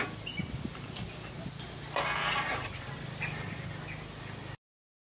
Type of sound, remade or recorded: recorded